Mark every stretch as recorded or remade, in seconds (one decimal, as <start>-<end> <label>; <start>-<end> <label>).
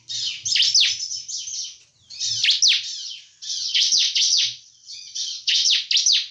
0.0-3.5 recorded; 3.5-5.7 remade; 5.7-6.3 recorded